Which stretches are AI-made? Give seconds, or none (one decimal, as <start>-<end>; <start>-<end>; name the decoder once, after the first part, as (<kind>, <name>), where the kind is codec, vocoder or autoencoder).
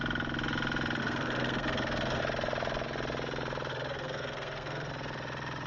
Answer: 1.0-2.2 (codec, SNAC); 3.7-4.9